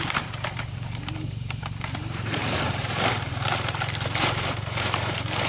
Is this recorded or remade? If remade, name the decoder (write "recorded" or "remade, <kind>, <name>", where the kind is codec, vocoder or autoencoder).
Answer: remade, vocoder, BigVGAN v2